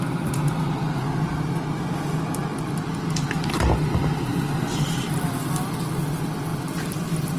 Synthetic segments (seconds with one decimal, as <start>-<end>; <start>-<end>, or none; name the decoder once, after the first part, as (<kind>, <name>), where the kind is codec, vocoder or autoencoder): 4.3-5.6 (vocoder, BigVGAN v2); 6.5-7.4